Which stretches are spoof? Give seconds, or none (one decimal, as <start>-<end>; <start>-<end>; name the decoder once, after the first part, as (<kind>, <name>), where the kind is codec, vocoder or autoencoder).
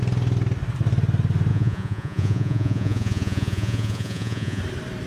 1.5-4.6 (vocoder, Vocos)